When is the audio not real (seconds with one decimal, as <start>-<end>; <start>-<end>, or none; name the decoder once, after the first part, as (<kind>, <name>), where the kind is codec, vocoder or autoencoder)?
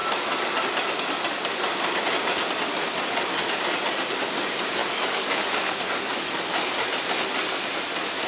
4.8-6.4 (codec, DAC)